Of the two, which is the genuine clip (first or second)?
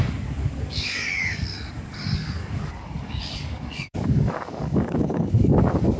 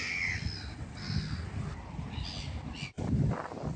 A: second